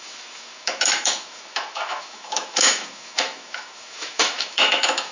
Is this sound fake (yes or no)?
yes